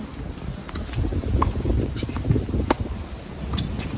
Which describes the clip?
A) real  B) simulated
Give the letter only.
A